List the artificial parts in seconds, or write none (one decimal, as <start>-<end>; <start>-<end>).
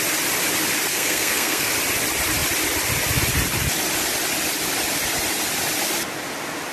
0.9-1.7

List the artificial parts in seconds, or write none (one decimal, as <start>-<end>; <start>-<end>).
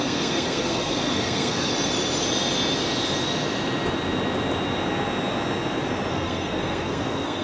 0.0-1.7; 6.1-7.4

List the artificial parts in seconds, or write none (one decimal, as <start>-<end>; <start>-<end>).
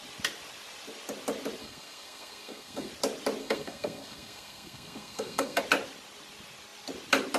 1.6-2.9; 3.4-5.6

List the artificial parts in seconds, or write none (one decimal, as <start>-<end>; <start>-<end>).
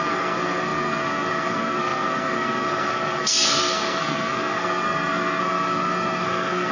0.0-6.7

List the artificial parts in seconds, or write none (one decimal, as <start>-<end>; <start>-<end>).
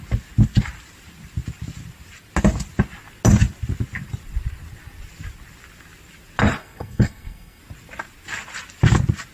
6.6-7.6